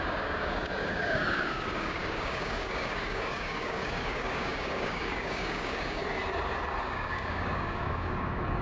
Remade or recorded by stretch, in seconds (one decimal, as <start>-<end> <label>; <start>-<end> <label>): 0.0-6.0 remade; 6.0-6.8 recorded; 6.8-8.6 remade